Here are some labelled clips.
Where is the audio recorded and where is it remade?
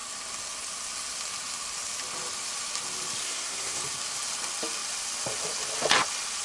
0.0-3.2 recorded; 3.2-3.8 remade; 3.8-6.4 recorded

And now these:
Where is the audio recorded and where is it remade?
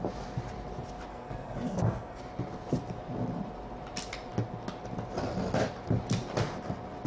0.0-1.1 recorded; 1.1-2.2 remade; 2.2-7.1 recorded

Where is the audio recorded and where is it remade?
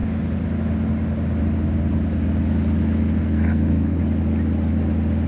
0.0-3.2 recorded; 3.2-4.0 remade; 4.0-5.3 recorded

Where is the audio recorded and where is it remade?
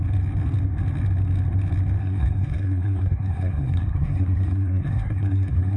0.0-2.0 recorded; 2.0-5.8 remade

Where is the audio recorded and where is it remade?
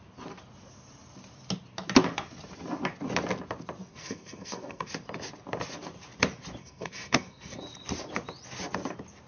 0.0-3.9 recorded; 3.9-4.9 remade; 4.9-6.6 recorded; 6.6-7.6 remade; 7.6-9.3 recorded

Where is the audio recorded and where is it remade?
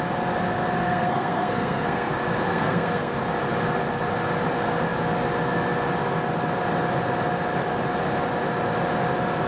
0.0-0.8 recorded; 0.8-2.1 remade; 2.1-2.5 recorded; 2.5-3.1 remade; 3.1-9.5 recorded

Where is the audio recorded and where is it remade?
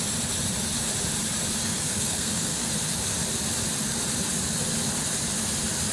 0.0-1.6 recorded; 1.6-2.7 remade; 2.7-5.9 recorded